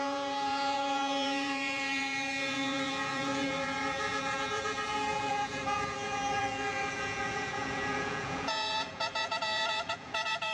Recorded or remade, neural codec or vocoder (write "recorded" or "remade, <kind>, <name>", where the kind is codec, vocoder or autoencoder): remade, vocoder, Vocos